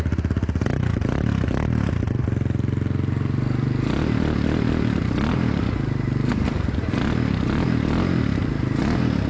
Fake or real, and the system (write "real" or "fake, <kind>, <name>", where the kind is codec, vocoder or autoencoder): real